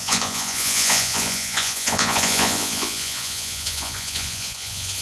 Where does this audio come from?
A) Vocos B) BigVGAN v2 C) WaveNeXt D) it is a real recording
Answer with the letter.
A